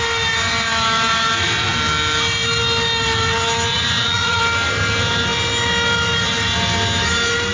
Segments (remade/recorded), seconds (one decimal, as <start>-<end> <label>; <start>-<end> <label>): 0.0-3.7 recorded; 3.7-4.4 remade; 4.4-7.5 recorded